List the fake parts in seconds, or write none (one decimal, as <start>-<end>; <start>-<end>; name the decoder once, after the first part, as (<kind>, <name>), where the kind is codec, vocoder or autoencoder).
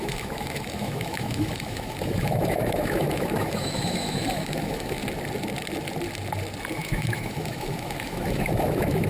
0.0-5.0 (autoencoder, DAC-VAE); 6.7-9.1